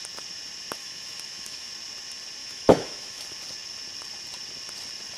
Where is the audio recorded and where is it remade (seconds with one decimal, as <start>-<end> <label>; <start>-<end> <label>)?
0.0-0.8 recorded; 0.8-1.7 remade; 1.7-2.4 recorded; 2.4-3.2 remade; 3.2-5.2 recorded